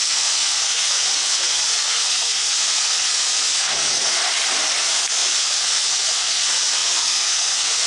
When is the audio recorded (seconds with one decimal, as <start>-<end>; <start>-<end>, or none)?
4.2-4.8